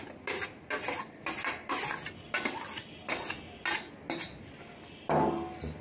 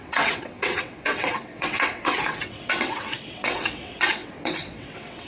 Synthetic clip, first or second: second